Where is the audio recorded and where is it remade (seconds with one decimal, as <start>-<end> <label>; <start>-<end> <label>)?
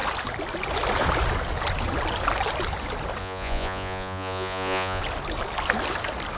0.0-3.2 recorded; 3.2-5.0 remade; 5.0-6.4 recorded